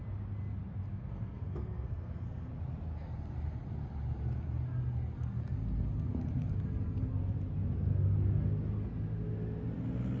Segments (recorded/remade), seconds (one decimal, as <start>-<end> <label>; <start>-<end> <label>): 0.0-0.9 recorded; 0.9-2.5 remade; 2.5-10.2 recorded